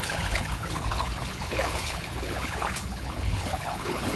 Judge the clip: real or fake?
fake